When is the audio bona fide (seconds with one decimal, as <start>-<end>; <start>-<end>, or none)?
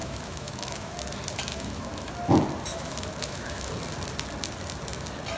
0.9-1.5; 2.1-2.7; 3.7-5.4